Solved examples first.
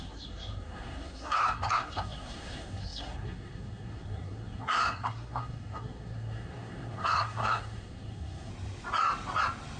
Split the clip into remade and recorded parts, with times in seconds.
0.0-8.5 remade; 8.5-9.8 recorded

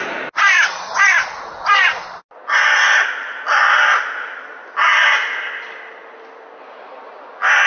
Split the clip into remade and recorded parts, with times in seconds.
0.0-7.7 recorded